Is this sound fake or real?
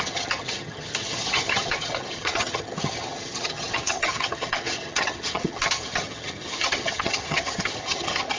fake